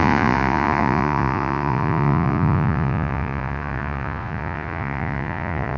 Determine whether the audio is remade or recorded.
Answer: remade